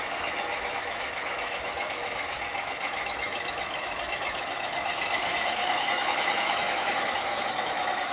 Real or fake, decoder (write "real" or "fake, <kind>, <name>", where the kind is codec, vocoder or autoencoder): fake, autoencoder, DAC-VAE